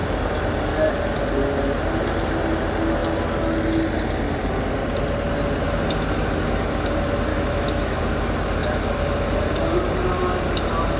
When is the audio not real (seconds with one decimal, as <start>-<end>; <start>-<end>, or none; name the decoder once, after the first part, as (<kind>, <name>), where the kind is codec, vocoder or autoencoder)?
7.3-8.0 (autoencoder, DAC-VAE)